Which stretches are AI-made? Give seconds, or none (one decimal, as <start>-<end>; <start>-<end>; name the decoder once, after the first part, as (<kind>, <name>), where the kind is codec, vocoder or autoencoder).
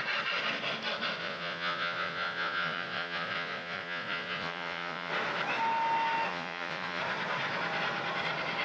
1.2-5.1 (vocoder, Vocos); 6.3-7.0